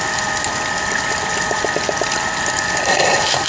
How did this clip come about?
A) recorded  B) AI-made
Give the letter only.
A